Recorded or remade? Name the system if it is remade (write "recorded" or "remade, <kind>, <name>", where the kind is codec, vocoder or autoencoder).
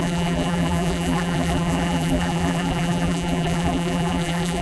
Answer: remade, vocoder, BigVGAN v2